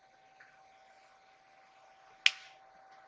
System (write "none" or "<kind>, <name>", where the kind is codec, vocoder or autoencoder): none